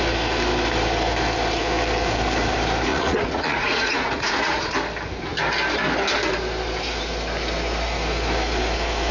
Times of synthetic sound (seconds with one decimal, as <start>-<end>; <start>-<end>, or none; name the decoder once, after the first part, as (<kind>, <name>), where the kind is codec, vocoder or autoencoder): 2.9-4.7 (vocoder, Vocos)